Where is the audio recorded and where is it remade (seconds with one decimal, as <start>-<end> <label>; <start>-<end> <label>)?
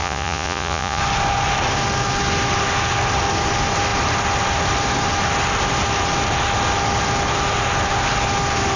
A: 0.0-1.0 remade; 1.0-8.8 recorded